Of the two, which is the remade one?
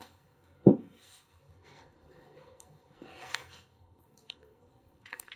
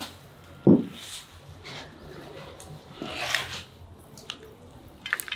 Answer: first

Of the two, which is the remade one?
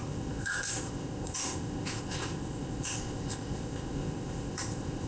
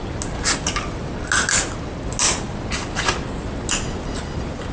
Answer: first